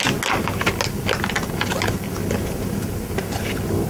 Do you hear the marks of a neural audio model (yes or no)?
no